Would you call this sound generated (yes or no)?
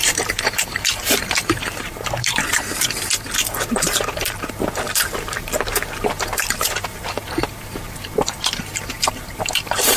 yes